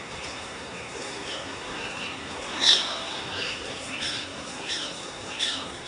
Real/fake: fake